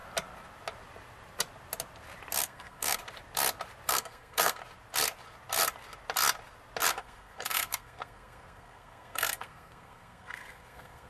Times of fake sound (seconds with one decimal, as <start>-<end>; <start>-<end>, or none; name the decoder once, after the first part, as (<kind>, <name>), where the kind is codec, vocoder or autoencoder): 2.4-3.0 (codec, SNAC); 3.9-4.6; 6.9-11.1